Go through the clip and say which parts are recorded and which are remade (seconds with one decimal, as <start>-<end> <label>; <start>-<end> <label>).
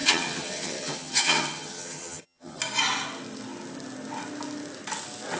0.0-2.6 remade; 2.6-5.4 recorded